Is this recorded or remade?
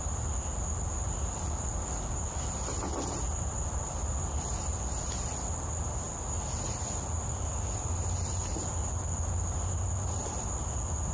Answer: recorded